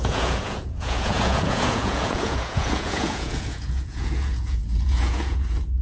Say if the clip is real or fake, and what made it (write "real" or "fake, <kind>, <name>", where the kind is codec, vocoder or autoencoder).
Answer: fake, vocoder, Vocos